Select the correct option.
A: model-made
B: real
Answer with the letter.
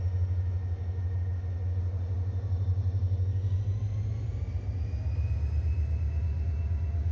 B